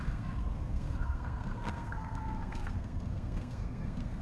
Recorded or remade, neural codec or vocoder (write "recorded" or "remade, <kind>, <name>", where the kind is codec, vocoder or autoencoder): remade, codec, SNAC